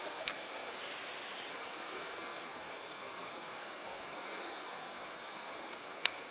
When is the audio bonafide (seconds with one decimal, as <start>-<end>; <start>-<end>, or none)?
0.8-1.5